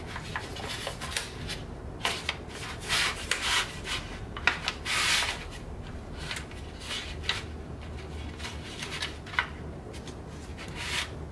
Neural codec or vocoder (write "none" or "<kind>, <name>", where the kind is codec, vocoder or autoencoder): none